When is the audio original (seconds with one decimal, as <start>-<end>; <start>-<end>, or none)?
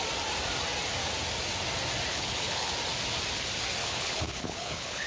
0.0-2.1; 2.7-3.8